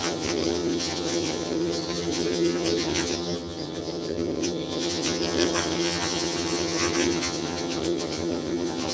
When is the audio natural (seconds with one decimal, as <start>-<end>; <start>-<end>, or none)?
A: none